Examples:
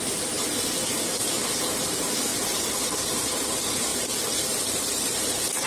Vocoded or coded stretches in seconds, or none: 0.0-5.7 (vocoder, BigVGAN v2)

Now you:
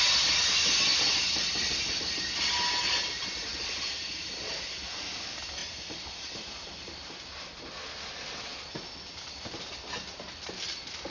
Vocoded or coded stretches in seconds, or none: 5.6-7.2 (vocoder, BigVGAN v2)

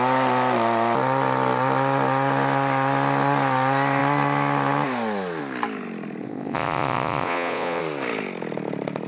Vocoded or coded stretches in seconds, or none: 6.2-7.8 (vocoder, Vocos)

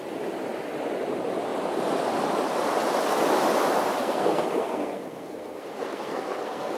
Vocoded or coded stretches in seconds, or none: 4.0-6.8 (codec, SNAC)

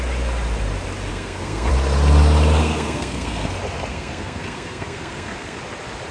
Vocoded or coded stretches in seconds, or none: 1.1-1.7 (codec, SNAC); 2.6-3.5; 3.9-5.6